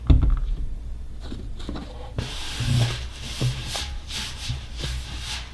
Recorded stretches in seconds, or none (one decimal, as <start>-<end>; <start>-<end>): 0.0-0.4; 2.7-3.6; 4.8-5.5